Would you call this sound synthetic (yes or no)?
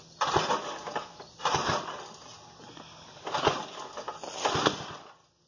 no